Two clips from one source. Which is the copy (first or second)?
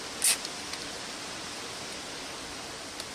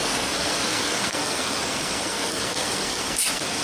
second